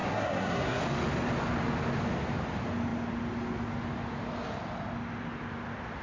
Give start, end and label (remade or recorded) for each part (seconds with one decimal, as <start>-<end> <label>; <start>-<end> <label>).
0.0-0.8 remade; 0.8-6.0 recorded